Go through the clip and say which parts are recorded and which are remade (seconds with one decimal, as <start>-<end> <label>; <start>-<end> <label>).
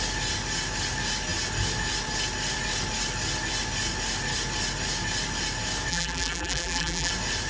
0.0-5.9 recorded; 5.9-7.1 remade; 7.1-7.5 recorded